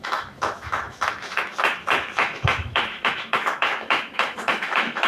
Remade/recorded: remade